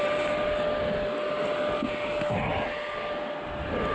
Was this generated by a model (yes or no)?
no